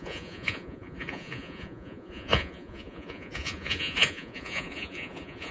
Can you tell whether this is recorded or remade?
remade